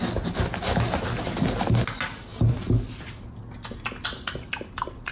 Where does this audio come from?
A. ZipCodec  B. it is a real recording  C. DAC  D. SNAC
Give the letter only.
B